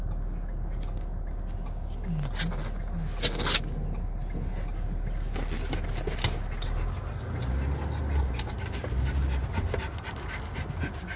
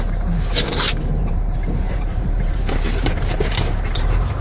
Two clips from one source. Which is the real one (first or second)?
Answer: first